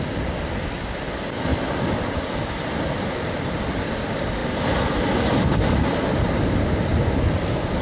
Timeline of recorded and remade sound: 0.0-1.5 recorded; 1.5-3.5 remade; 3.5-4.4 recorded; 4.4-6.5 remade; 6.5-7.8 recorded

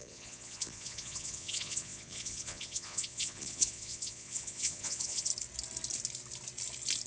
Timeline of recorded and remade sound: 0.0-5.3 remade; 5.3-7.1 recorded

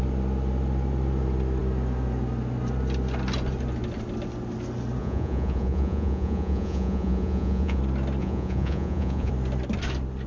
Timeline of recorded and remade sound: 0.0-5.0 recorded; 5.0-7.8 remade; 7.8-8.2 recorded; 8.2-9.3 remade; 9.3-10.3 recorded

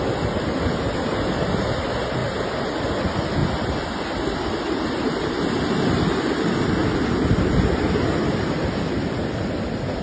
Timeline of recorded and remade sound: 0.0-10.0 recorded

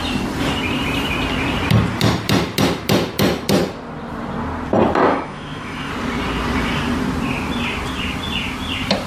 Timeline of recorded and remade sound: 0.0-5.1 recorded; 5.1-5.9 remade; 5.9-9.1 recorded

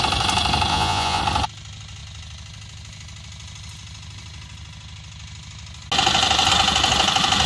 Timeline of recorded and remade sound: 0.0-0.7 recorded; 0.7-1.2 remade; 1.2-7.5 recorded

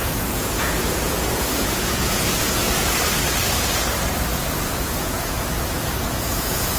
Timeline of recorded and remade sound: 0.0-2.9 remade; 2.9-4.3 recorded; 4.3-6.8 remade